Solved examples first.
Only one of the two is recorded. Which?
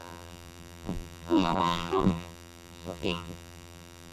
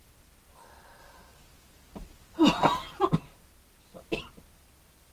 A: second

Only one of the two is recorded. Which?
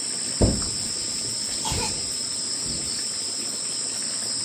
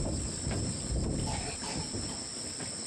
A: first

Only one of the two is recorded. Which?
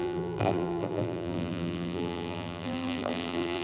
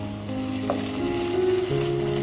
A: second